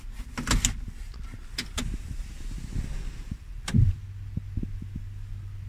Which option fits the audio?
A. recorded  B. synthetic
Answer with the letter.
A